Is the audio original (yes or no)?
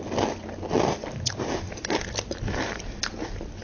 yes